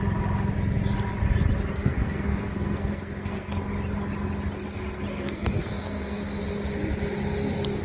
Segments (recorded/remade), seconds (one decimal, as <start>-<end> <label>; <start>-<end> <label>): 0.0-1.7 recorded; 1.7-3.5 remade; 3.5-5.1 recorded; 5.1-6.2 remade; 6.2-7.8 recorded